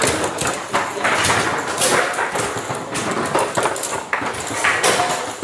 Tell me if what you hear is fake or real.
real